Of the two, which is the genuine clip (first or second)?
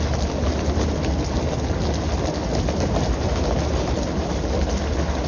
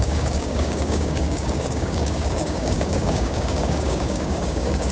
first